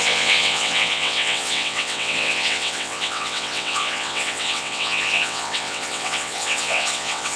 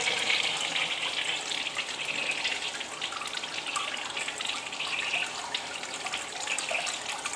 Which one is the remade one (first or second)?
first